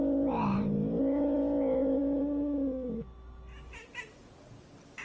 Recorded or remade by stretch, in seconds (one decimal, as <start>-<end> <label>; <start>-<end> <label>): 0.0-5.0 recorded